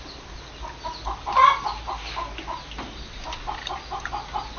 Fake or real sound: real